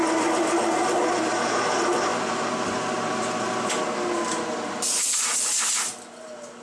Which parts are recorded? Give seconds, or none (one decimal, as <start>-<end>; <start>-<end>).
0.0-6.6